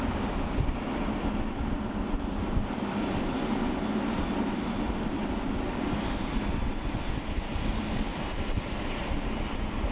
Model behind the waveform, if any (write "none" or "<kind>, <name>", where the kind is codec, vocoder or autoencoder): none